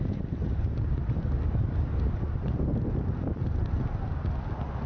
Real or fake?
real